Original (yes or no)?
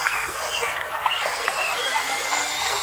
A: no